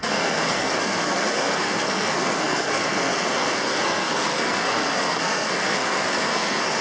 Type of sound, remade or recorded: remade